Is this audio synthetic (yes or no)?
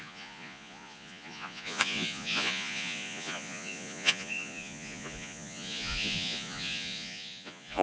yes